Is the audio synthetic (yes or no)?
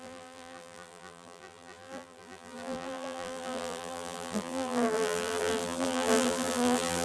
yes